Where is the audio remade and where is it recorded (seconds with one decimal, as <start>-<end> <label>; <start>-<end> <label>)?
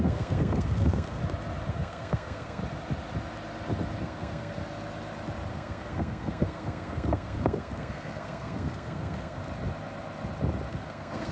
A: 0.0-1.2 remade; 1.2-1.7 recorded; 1.7-2.6 remade; 2.6-4.0 recorded; 4.0-4.6 remade; 4.6-5.5 recorded; 5.5-9.4 remade; 9.4-10.7 recorded; 10.7-11.3 remade